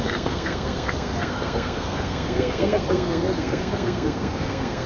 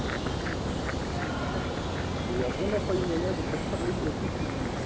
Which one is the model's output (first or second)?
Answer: first